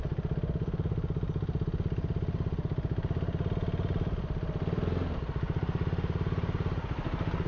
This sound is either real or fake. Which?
real